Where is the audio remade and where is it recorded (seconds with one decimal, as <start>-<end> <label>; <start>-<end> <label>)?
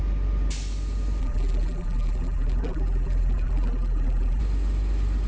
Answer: 0.0-1.2 recorded; 1.2-4.4 remade; 4.4-5.3 recorded